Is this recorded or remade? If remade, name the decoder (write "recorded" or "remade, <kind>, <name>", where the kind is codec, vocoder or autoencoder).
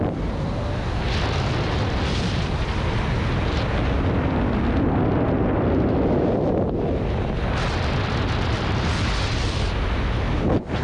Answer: recorded